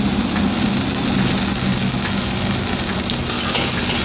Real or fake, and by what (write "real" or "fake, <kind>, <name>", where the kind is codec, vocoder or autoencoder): real